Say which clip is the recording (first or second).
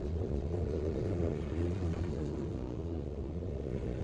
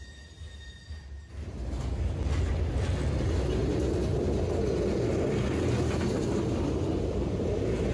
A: second